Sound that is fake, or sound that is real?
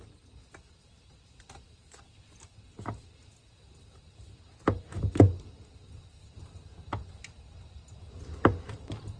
real